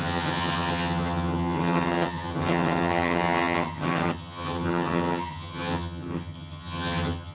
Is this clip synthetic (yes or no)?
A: yes